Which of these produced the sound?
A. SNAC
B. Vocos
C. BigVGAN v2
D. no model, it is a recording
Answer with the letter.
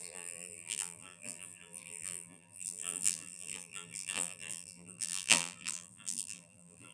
C